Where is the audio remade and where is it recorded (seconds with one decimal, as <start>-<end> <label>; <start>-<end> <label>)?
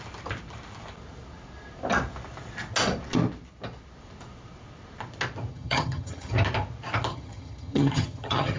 0.0-5.5 recorded; 5.5-6.3 remade; 6.3-7.1 recorded; 7.1-8.6 remade